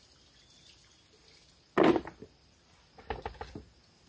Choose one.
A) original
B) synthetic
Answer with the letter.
A